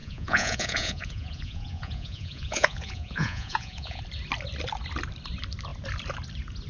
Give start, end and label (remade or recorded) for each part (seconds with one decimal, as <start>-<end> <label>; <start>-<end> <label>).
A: 0.0-4.0 remade; 4.0-6.7 recorded